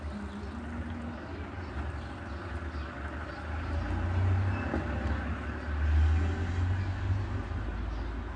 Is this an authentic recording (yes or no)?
yes